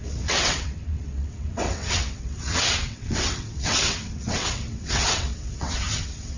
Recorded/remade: remade